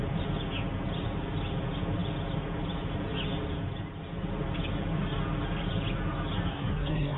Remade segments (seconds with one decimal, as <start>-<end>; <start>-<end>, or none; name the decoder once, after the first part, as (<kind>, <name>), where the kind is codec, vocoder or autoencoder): 6.5-7.2 (codec, SNAC)